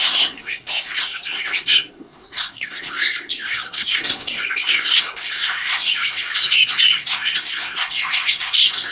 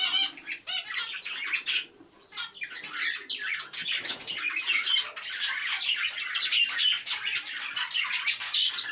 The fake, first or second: first